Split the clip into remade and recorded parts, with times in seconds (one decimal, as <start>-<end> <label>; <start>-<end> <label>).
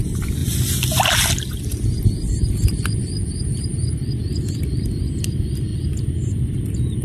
0.0-1.7 recorded; 1.7-4.6 remade; 4.6-7.0 recorded